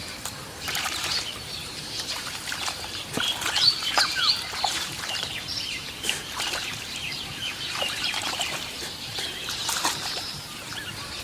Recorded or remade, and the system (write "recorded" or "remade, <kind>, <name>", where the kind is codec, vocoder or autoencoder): remade, vocoder, BigVGAN v2